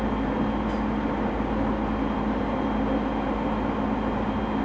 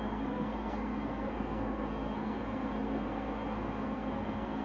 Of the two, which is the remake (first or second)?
second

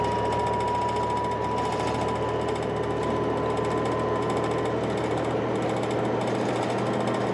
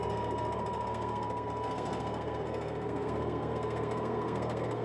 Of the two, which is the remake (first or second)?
second